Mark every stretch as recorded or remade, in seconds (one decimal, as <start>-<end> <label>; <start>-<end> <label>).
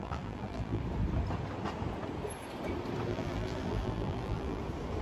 0.0-0.8 remade; 0.8-3.1 recorded; 3.1-4.6 remade; 4.6-5.0 recorded